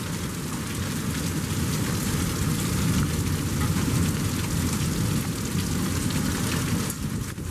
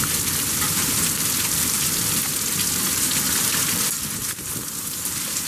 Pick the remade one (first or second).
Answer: second